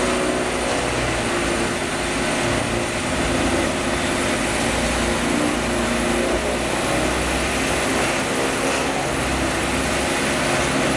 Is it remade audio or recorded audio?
recorded